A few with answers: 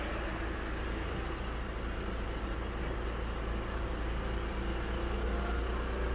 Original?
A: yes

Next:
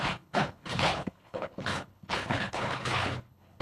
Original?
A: no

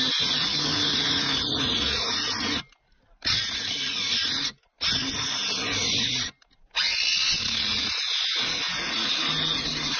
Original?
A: yes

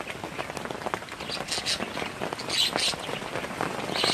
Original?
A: yes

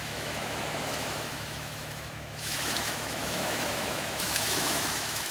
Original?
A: no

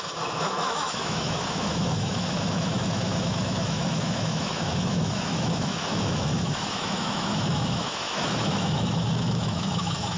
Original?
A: no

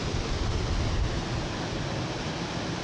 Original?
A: yes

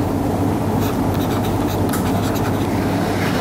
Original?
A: yes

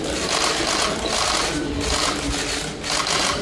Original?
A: yes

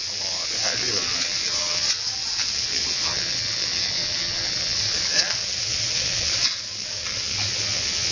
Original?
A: no